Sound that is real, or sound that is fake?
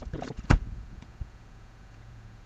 fake